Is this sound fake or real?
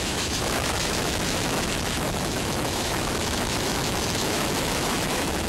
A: fake